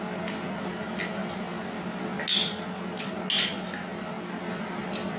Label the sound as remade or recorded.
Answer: recorded